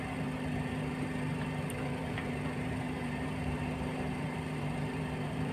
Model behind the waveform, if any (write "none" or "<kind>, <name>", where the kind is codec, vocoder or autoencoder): vocoder, BigVGAN v2